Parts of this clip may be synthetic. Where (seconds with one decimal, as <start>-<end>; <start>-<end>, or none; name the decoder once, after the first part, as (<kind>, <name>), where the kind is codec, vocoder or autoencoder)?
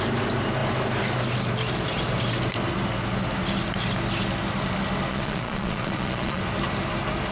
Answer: 5.1-6.4 (vocoder, Vocos)